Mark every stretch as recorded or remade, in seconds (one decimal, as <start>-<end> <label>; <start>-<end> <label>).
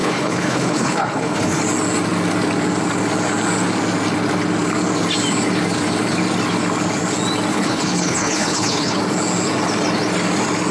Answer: 0.0-1.6 remade; 1.6-7.5 recorded; 7.5-9.0 remade; 9.0-10.7 recorded